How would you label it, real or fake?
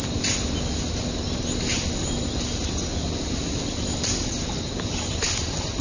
real